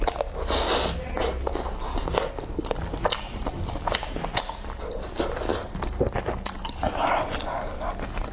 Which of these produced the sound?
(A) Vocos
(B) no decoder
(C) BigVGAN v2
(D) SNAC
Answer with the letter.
B